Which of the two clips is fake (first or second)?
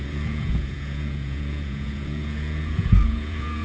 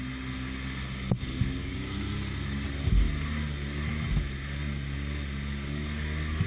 first